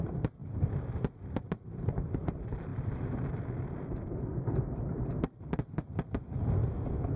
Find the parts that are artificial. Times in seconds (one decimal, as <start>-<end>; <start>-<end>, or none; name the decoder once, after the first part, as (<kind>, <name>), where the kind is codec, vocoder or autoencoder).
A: 0.4-0.9 (vocoder, BigVGAN v2); 2.7-5.0